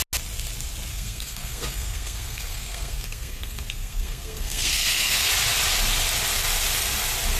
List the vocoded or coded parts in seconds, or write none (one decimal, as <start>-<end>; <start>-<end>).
0.9-5.3